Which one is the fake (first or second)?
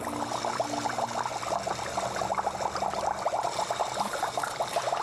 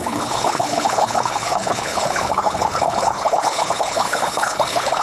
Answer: second